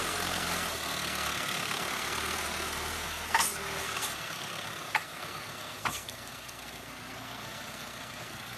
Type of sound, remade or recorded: remade